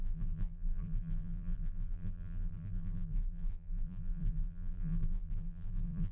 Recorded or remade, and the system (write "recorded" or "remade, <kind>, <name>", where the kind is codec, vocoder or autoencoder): remade, vocoder, BigVGAN v2